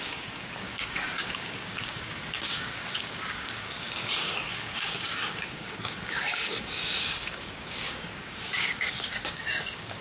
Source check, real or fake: fake